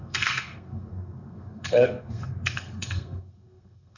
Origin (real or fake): fake